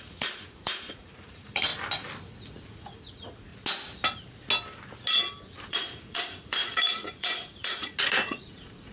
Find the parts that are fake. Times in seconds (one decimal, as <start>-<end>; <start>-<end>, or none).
0.0-1.7; 2.5-3.5; 5.7-8.9

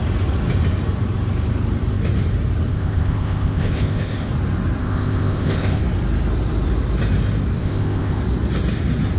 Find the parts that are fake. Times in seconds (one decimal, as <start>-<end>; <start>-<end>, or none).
2.7-4.3; 4.8-5.8; 7.6-8.2